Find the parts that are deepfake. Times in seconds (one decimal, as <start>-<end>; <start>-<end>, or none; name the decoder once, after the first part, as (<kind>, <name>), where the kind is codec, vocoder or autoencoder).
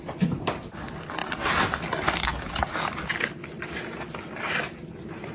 none